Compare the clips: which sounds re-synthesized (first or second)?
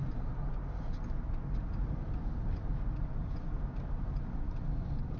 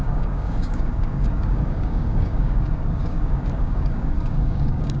second